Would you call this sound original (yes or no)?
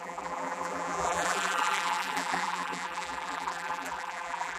no